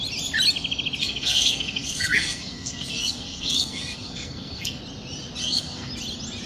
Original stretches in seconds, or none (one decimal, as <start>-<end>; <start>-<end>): 0.0-1.0; 4.8-5.4; 5.9-6.5